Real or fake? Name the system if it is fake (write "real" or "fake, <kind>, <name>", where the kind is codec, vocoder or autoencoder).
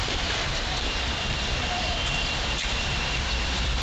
fake, vocoder, BigVGAN v2